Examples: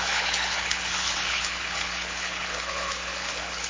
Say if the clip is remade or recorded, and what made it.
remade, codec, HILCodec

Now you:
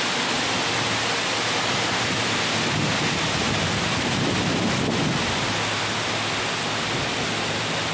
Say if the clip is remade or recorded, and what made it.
recorded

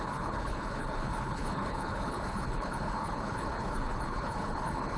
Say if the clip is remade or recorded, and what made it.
remade, codec, HILCodec